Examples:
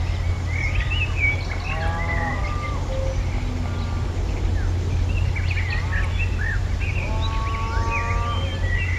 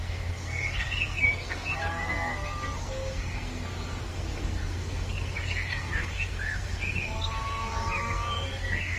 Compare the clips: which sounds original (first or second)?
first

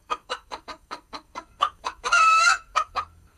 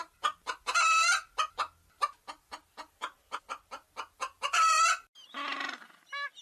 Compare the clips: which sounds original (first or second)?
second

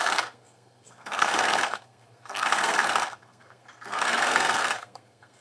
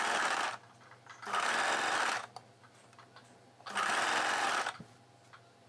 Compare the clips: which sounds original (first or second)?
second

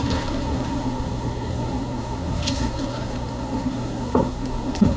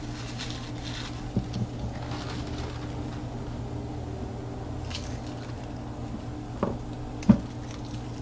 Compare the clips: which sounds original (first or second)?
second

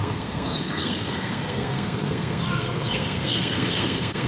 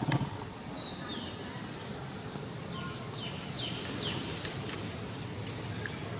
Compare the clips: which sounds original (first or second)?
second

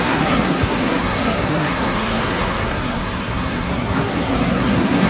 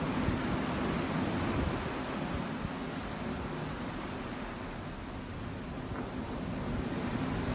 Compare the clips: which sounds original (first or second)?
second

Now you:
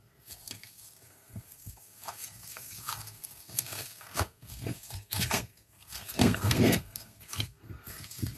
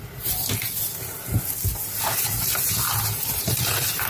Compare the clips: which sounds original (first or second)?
second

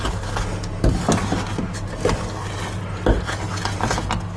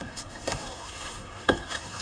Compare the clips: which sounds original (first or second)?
first